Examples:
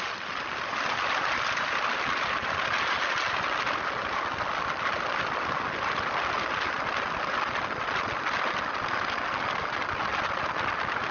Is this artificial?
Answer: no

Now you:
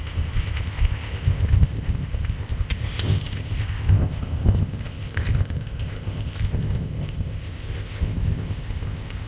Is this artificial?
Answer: yes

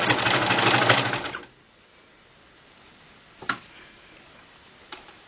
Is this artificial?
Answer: no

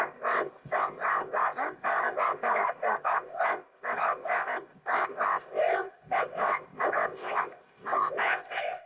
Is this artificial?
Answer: yes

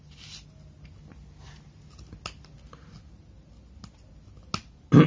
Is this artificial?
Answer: no